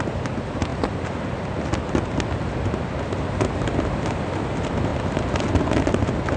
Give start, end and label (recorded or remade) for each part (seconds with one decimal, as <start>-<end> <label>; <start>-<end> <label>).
0.0-6.4 recorded